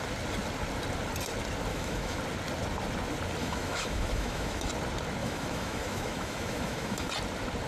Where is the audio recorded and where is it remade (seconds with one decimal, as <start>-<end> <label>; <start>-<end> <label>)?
0.0-1.7 recorded; 1.7-2.2 remade; 2.2-3.4 recorded; 3.4-4.7 remade; 4.7-5.2 recorded; 5.2-7.1 remade; 7.1-7.7 recorded

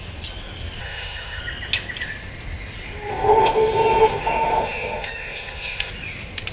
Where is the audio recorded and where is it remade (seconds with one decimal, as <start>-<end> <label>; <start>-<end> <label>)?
0.0-0.8 recorded; 0.8-1.4 remade; 1.4-3.1 recorded; 3.1-5.9 remade; 5.9-6.5 recorded

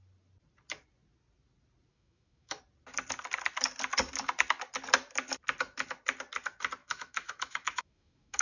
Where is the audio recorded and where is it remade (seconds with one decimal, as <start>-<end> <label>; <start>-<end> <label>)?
0.0-1.9 recorded; 1.9-2.6 remade; 2.6-6.8 recorded; 6.8-8.4 remade

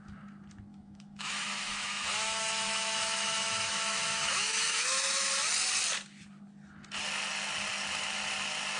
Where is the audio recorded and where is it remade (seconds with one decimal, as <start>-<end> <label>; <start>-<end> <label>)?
0.0-0.7 recorded; 0.7-5.3 remade; 5.3-8.8 recorded

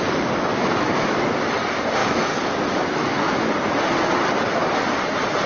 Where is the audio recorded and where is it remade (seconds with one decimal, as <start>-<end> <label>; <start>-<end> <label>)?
0.0-0.5 recorded; 0.5-1.4 remade; 1.4-2.0 recorded; 2.0-3.4 remade; 3.4-5.5 recorded

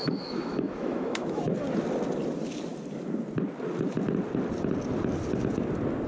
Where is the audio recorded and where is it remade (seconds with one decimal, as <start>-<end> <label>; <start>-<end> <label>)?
0.0-1.4 remade; 1.4-6.1 recorded